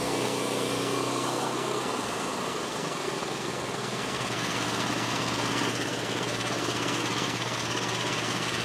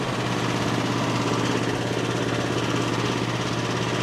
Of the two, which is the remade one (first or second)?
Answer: first